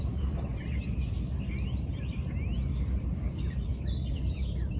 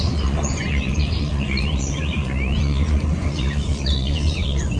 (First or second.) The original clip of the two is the first